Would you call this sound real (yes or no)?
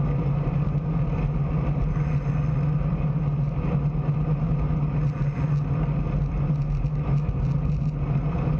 yes